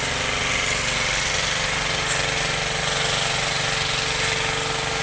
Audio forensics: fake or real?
real